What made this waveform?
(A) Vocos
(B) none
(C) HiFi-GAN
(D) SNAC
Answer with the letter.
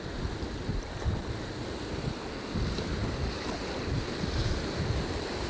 B